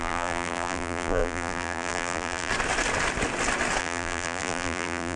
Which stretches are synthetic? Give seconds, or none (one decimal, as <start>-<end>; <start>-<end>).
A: 0.0-2.5; 3.8-5.2